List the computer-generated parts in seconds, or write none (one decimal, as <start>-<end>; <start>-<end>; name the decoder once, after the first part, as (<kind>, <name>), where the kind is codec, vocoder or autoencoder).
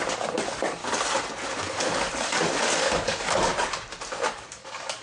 0.0-0.8 (codec, DAC); 1.6-3.5; 4.3-5.0